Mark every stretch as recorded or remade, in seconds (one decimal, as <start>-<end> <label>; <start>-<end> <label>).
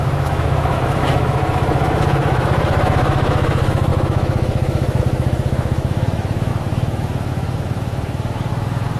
0.0-9.0 remade